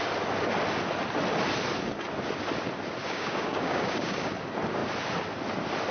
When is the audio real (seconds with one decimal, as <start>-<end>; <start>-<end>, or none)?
0.0-3.0; 4.3-5.9